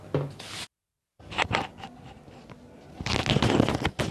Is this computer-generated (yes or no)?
no